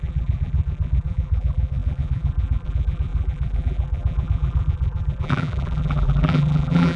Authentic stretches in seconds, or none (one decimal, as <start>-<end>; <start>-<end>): none